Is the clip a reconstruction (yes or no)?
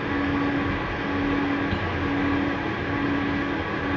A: no